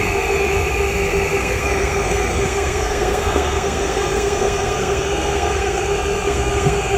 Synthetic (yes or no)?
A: yes